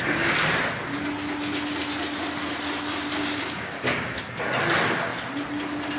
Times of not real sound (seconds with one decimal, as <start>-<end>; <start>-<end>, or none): 3.2-4.3